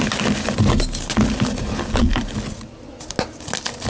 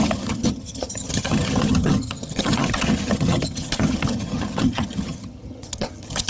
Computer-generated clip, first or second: second